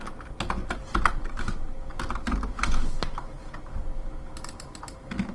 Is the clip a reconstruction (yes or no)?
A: no